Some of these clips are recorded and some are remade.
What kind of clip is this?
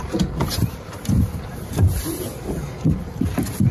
recorded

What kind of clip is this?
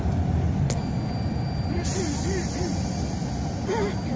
recorded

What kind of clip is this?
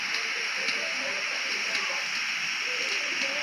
recorded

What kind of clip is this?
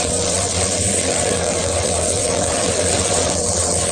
remade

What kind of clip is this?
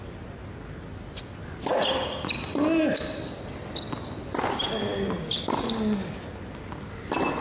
recorded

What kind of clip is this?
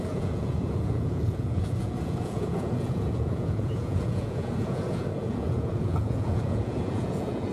remade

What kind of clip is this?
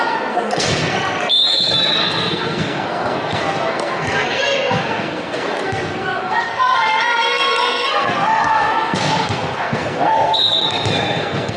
remade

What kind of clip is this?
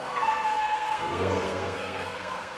remade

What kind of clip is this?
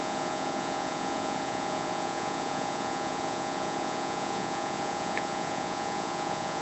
remade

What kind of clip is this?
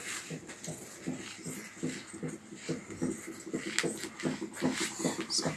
recorded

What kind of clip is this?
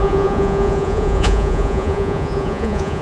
remade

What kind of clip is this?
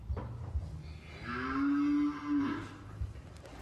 recorded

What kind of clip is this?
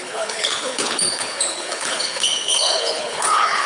remade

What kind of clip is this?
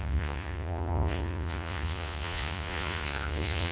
remade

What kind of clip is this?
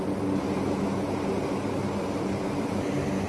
recorded